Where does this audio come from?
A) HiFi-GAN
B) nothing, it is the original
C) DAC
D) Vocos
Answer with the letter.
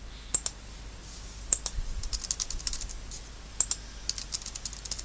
B